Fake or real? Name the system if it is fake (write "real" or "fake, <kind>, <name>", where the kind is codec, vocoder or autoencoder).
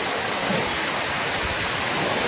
real